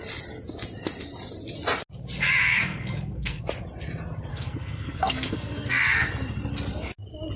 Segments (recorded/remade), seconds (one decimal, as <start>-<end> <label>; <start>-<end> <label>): 0.0-2.4 recorded; 2.4-3.4 remade; 3.4-4.3 recorded; 4.3-6.1 remade; 6.1-7.4 recorded